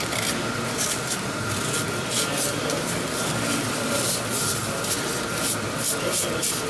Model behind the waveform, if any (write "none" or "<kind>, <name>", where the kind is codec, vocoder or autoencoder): vocoder, BigVGAN v2